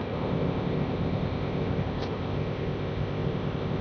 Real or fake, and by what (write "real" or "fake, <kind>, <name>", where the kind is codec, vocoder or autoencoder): fake, codec, ZipCodec